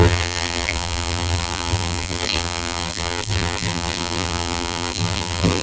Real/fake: fake